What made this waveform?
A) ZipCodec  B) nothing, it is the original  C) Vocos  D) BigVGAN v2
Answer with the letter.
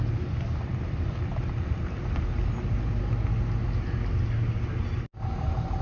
B